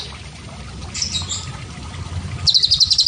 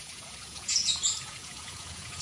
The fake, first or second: second